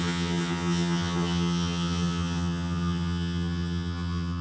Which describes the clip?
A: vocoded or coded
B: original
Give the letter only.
A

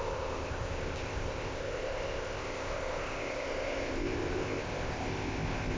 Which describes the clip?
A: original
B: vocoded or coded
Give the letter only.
B